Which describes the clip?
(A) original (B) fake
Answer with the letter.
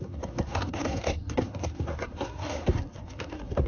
B